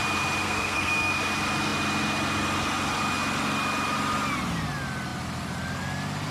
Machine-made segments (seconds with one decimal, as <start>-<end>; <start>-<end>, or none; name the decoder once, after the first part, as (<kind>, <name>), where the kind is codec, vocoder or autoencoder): 0.4-1.2 (codec, SNAC)